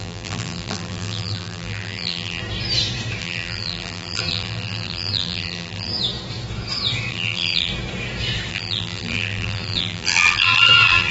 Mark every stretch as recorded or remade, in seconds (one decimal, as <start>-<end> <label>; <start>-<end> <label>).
0.0-2.4 remade; 2.4-3.2 recorded; 3.2-5.9 remade; 5.9-7.1 recorded; 7.1-7.7 remade; 7.7-8.5 recorded; 8.5-11.1 remade

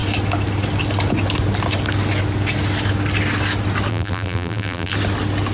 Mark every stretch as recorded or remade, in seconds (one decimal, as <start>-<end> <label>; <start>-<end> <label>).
0.0-3.9 recorded; 3.9-4.9 remade; 4.9-5.5 recorded

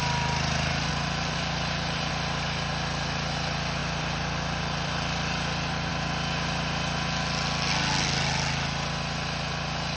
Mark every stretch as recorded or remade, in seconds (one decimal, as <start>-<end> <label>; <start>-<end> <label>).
0.0-0.9 recorded; 0.9-2.1 remade; 2.1-3.8 recorded; 3.8-5.9 remade; 5.9-10.0 recorded